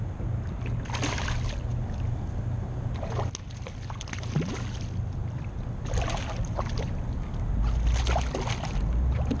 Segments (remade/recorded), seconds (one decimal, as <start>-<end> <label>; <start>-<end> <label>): 0.0-9.4 recorded